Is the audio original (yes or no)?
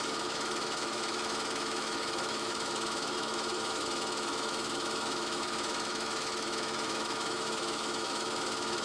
no